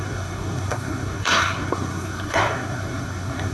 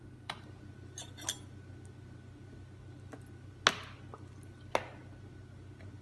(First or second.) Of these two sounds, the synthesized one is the first